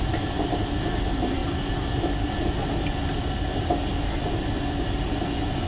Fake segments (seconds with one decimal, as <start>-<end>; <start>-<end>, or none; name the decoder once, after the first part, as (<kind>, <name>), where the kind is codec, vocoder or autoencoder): none